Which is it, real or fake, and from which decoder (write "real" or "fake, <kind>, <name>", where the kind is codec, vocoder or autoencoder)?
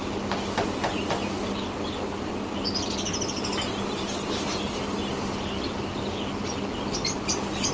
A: real